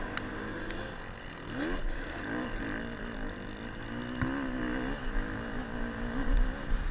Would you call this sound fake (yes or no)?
no